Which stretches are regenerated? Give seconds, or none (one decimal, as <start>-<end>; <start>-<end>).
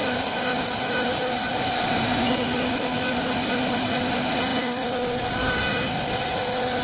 0.0-4.1; 4.5-5.6